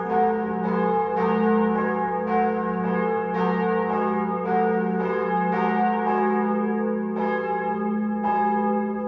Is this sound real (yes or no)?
yes